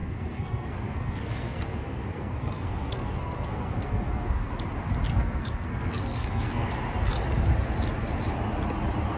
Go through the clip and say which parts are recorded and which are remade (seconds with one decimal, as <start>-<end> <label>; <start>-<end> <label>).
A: 0.0-4.5 remade; 4.5-5.1 recorded; 5.1-6.7 remade; 6.7-9.2 recorded